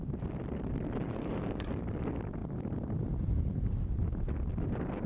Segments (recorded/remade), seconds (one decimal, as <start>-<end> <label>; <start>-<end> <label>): 0.0-1.3 remade; 1.3-2.4 recorded; 2.4-3.9 remade; 3.9-5.1 recorded